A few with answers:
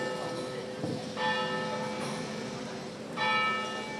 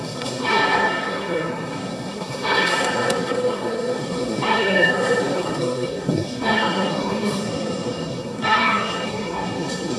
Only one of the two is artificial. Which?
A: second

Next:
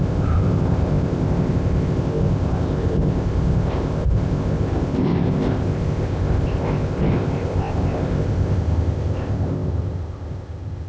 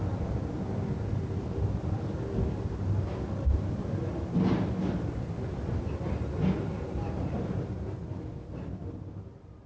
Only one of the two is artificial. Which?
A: first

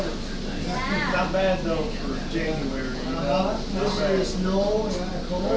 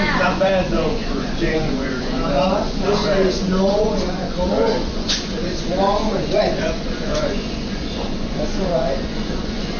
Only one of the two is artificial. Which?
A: second